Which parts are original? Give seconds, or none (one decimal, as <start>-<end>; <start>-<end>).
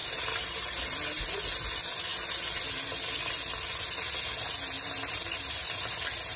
0.8-6.4